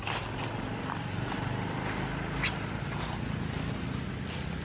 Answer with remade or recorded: recorded